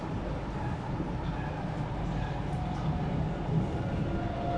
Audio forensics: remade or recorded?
recorded